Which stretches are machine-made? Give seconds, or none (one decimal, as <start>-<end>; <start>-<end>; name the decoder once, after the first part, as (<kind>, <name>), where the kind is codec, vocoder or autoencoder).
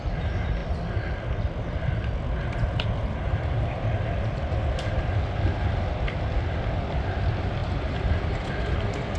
none